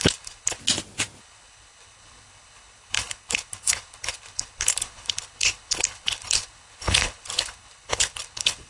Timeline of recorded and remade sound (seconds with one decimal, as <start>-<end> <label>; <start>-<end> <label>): 0.0-0.6 remade; 0.6-1.2 recorded; 1.2-8.7 remade